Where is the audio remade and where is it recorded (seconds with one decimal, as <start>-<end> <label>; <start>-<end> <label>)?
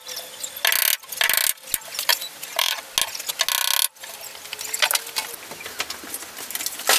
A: 0.0-2.1 recorded; 2.1-2.8 remade; 2.8-7.0 recorded